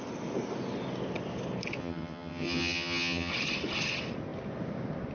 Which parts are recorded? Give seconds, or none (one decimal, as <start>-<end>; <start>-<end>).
0.0-1.8; 3.3-5.1